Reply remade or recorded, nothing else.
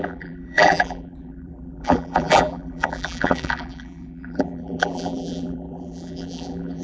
remade